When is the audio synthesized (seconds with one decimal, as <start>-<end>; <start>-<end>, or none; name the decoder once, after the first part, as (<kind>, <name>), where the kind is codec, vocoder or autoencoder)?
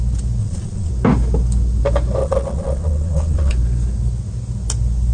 0.4-0.9 (vocoder, Vocos); 2.2-3.5